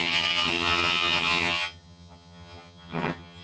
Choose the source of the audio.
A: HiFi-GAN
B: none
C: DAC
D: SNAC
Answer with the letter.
A